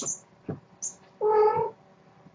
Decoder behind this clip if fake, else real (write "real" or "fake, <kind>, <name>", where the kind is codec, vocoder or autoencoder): real